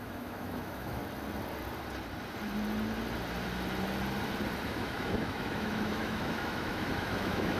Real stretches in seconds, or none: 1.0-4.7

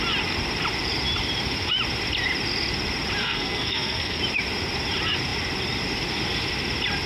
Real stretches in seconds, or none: 0.0-3.2; 4.2-7.1

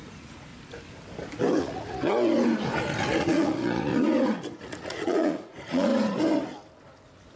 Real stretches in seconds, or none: 0.5-1.6; 2.0-3.1; 3.9-4.5; 5.9-7.4

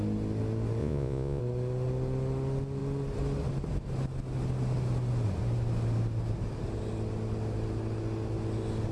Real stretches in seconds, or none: 0.0-0.8; 1.4-8.9

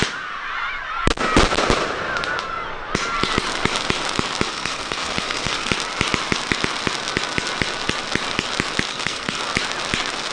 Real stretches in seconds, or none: 0.0-4.5; 5.7-8.9; 9.4-10.3